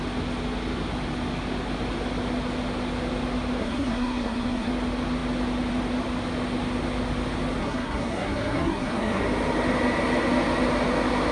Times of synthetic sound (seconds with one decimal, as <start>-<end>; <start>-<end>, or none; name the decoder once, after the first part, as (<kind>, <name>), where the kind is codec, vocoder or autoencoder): 3.6-4.7 (codec, SNAC); 7.6-9.2